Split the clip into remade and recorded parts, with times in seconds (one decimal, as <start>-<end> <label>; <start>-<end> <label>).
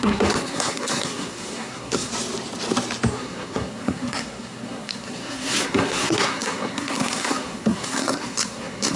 0.0-2.1 remade; 2.1-3.1 recorded; 3.1-9.0 remade